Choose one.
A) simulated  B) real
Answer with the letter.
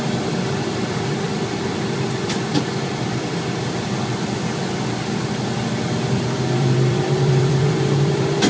A